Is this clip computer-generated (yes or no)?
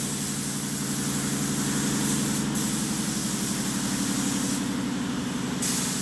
no